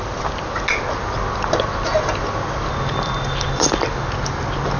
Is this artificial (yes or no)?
no